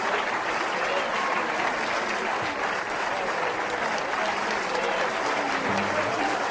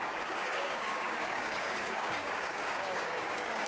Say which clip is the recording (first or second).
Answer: first